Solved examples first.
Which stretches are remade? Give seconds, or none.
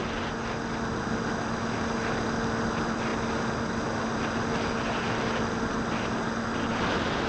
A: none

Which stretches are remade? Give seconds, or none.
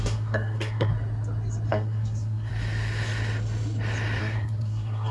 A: 0.0-0.9 (codec, SNAC); 1.7-2.5; 4.2-5.1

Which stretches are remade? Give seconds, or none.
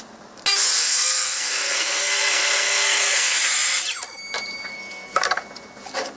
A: 0.8-3.4 (codec, SNAC); 4.7-5.4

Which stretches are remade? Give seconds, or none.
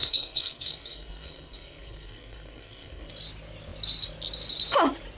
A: 0.0-3.1 (codec, SNAC)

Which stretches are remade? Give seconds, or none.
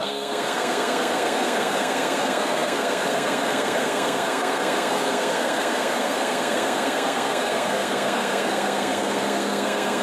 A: 0.0-10.0 (codec, SNAC)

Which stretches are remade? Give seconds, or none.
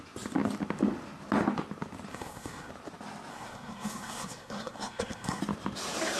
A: 2.1-2.7 (codec, SNAC); 3.3-5.4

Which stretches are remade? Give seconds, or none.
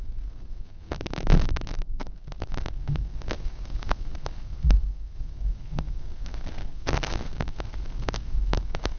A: 0.0-9.0 (codec, SNAC)